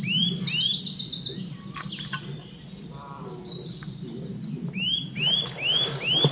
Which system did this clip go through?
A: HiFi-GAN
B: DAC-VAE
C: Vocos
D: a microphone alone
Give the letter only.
D